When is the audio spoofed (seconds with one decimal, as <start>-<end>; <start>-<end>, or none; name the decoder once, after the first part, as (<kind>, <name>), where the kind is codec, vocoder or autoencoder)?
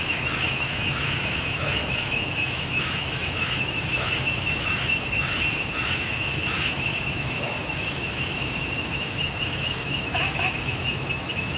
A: 0.0-11.6 (autoencoder, DAC-VAE)